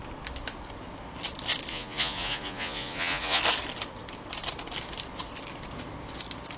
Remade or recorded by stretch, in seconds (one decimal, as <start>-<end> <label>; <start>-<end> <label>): 0.0-1.7 recorded; 1.7-3.4 remade; 3.4-6.6 recorded